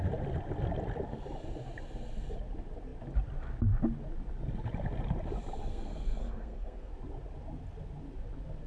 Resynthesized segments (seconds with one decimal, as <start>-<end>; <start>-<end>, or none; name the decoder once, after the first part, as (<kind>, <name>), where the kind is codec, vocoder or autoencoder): 5.7-6.9 (codec, SNAC)